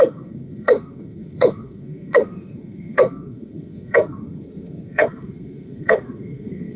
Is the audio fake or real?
fake